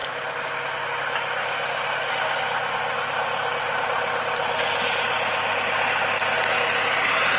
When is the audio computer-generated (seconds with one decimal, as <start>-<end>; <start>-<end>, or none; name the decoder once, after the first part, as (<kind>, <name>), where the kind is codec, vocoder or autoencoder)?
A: none